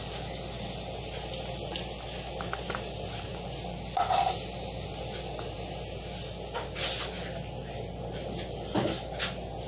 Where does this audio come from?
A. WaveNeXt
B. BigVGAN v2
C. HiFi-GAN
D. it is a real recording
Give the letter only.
D